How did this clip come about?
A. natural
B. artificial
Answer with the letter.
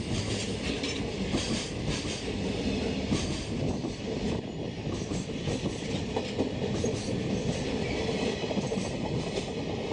A